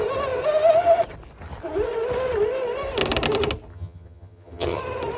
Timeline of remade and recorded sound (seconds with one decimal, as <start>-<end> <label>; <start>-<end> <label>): 0.0-3.7 recorded; 3.7-4.8 remade; 4.8-5.2 recorded